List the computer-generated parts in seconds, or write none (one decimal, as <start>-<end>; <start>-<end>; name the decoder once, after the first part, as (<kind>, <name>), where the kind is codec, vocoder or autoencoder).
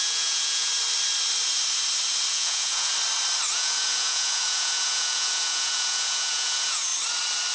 0.0-0.7 (vocoder, Vocos); 2.3-2.9; 3.5-6.9